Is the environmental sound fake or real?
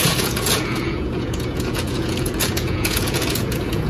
fake